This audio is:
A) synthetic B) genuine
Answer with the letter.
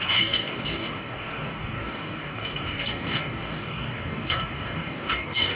A